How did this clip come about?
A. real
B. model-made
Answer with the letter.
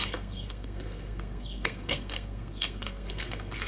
B